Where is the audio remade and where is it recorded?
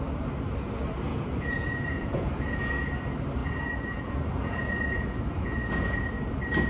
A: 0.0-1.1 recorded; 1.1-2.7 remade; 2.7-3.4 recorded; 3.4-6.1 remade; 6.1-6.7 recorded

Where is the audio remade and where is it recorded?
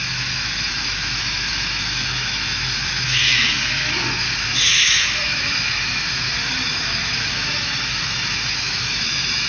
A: 0.0-9.5 remade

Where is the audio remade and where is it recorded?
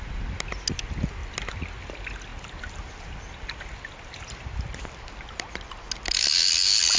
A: 0.0-7.0 recorded